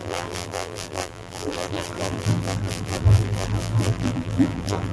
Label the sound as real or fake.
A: fake